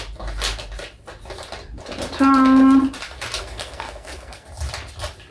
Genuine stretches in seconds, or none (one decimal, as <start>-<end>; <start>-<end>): 0.0-3.4; 4.5-5.3